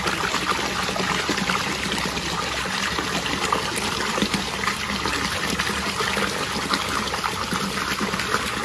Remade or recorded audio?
recorded